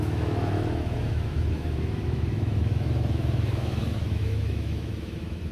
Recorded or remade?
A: remade